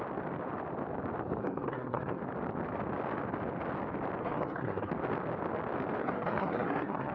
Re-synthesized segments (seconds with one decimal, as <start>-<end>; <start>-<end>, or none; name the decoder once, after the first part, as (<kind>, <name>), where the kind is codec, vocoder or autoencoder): 1.4-2.2 (codec, SNAC); 4.2-4.9; 6.0-7.1